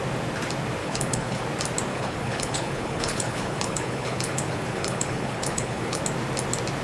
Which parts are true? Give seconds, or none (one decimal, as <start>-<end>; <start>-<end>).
0.0-0.8; 1.4-1.9; 6.0-6.8